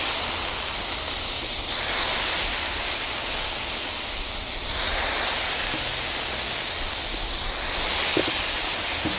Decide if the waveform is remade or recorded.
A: recorded